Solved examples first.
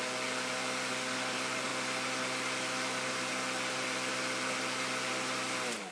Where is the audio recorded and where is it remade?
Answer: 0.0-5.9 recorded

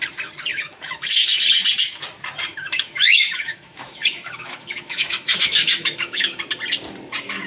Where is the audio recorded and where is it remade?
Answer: 0.0-0.5 recorded; 0.5-1.4 remade; 1.4-2.5 recorded; 2.5-6.4 remade; 6.4-7.5 recorded

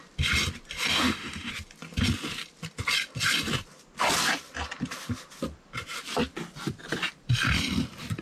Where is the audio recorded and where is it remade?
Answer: 0.0-0.9 recorded; 0.9-1.5 remade; 1.5-8.2 recorded

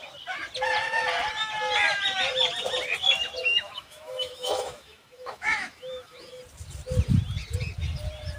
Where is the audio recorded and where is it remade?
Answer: 0.0-3.4 recorded; 3.4-6.4 remade; 6.4-8.4 recorded

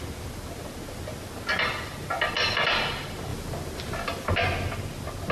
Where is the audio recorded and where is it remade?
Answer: 0.0-5.3 recorded

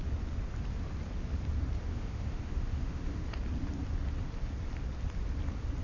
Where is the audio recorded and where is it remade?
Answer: 0.0-1.9 recorded; 1.9-3.3 remade; 3.3-5.8 recorded